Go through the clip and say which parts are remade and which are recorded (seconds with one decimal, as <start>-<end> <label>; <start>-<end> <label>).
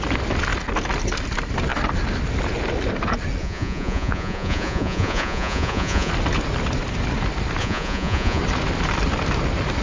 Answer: 0.0-3.4 recorded; 3.4-6.1 remade; 6.1-7.6 recorded; 7.6-8.4 remade; 8.4-9.8 recorded